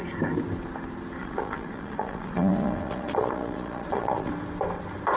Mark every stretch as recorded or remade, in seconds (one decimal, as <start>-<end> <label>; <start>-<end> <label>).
0.0-1.2 recorded; 1.2-4.3 remade; 4.3-5.2 recorded